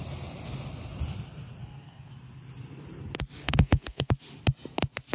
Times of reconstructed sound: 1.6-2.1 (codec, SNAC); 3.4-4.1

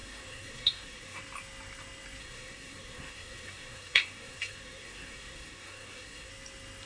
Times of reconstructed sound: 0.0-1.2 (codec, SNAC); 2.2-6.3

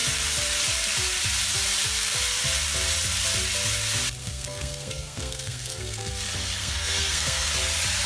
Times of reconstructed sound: 4.2-6.1 (codec, SNAC); 6.6-7.5

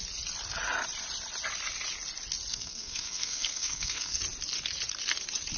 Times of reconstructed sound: 2.5-4.2 (codec, SNAC)

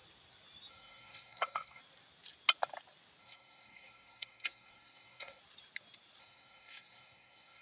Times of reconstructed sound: 0.7-1.8 (codec, SNAC); 3.2-5.4; 6.2-7.6

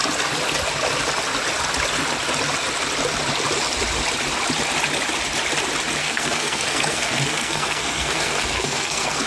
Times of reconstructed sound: 6.0-9.3 (codec, SNAC)

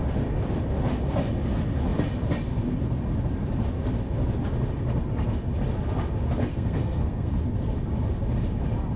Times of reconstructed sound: 6.5-7.3 (codec, SNAC)

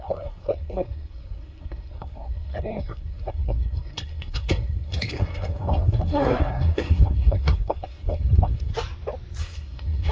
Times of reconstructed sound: 0.0-8.7 (codec, SNAC); 9.4-10.1